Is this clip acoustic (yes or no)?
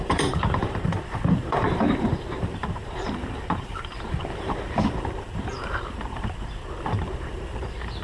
no